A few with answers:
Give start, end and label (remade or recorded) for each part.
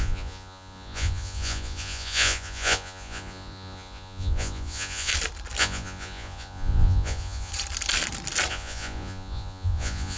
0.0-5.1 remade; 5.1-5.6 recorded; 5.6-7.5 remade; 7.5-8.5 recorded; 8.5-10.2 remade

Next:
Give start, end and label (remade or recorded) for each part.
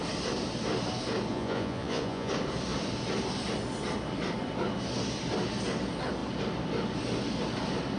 0.0-1.3 recorded; 1.3-2.3 remade; 2.3-8.0 recorded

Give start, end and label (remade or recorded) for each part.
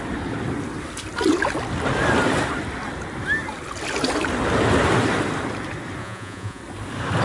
0.0-6.0 recorded; 6.0-6.6 remade; 6.6-7.2 recorded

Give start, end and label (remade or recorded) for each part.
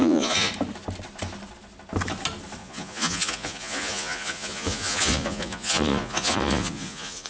0.0-0.5 remade; 0.5-2.6 recorded; 2.6-7.3 remade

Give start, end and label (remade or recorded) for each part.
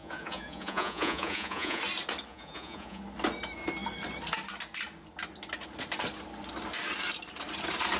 0.0-1.8 remade; 1.8-2.3 recorded; 2.3-3.0 remade; 3.0-8.0 recorded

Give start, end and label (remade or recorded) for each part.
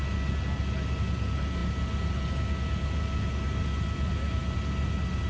0.0-5.3 recorded